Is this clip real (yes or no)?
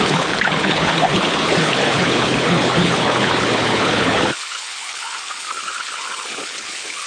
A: no